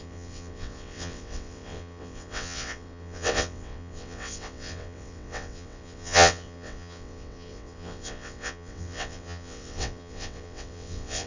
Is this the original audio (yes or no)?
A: no